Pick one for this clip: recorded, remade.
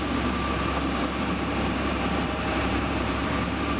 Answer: remade